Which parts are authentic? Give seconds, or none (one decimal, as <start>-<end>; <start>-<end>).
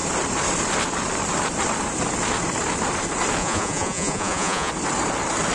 0.0-3.4; 4.7-5.5